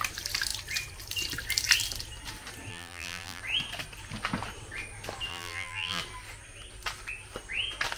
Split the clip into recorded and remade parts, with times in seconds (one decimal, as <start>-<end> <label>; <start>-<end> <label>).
0.0-2.7 recorded; 2.7-3.4 remade; 3.4-5.3 recorded; 5.3-6.0 remade; 6.0-8.0 recorded